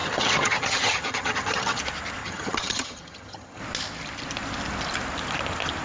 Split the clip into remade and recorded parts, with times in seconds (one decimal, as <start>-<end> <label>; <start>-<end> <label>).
0.0-1.8 remade; 1.8-2.2 recorded; 2.2-3.6 remade; 3.6-5.8 recorded